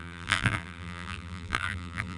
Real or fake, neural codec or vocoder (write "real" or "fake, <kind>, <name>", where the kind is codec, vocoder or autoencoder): fake, vocoder, BigVGAN v2